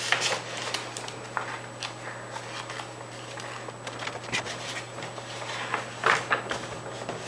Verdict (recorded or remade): recorded